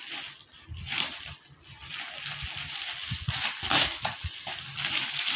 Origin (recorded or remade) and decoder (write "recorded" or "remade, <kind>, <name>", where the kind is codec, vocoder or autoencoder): recorded